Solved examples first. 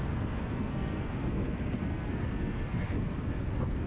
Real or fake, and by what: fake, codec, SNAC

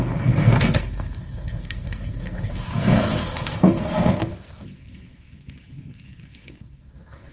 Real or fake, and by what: fake, codec, SNAC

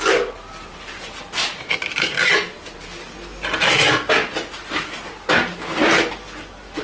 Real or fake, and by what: real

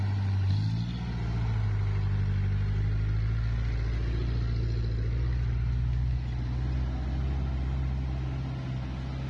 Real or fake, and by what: real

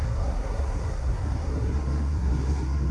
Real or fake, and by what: fake, codec, SNAC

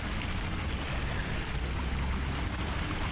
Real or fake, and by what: real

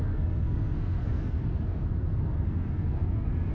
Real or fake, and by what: fake, codec, SNAC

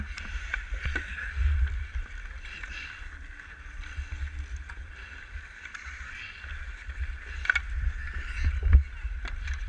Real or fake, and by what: real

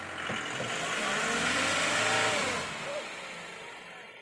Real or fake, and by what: real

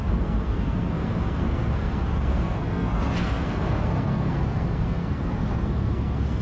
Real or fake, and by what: fake, codec, SNAC